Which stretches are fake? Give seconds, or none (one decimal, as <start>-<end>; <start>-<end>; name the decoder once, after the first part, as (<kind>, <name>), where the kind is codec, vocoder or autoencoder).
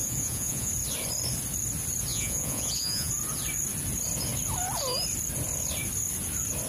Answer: 0.0-0.7 (vocoder, Vocos); 2.1-3.1